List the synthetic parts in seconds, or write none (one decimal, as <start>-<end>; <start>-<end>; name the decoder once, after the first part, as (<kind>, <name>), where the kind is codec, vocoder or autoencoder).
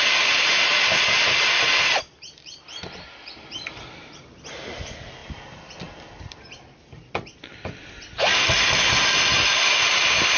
none